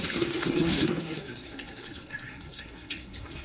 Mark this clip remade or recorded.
remade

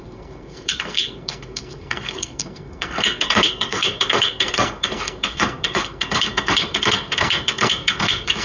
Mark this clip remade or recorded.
remade